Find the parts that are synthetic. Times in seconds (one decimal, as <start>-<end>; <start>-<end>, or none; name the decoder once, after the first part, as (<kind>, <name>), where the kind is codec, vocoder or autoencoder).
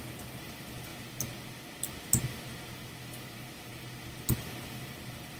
0.0-0.9 (vocoder, BigVGAN v2); 3.0-3.7; 4.4-5.4